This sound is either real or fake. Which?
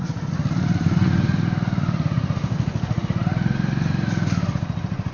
real